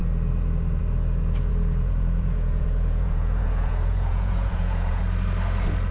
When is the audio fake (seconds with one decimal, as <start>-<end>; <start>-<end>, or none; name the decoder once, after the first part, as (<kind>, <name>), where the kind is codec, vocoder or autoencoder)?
1.5-5.0 (vocoder, Vocos)